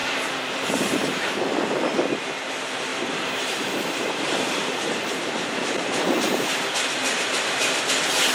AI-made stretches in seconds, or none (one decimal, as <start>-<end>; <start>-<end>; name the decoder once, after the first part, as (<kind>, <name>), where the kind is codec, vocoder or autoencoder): 0.0-1.4 (vocoder, BigVGAN v2); 2.9-6.5; 7.0-7.6